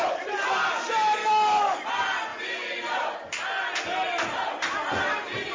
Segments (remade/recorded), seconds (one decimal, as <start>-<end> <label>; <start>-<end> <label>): 0.0-1.2 recorded; 1.2-1.8 remade; 1.8-5.5 recorded